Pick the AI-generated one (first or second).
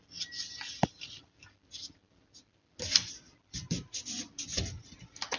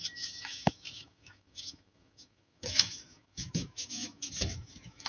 second